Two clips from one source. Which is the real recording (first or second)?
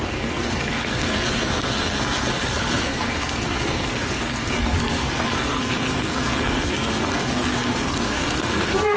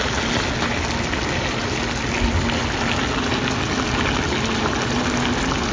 second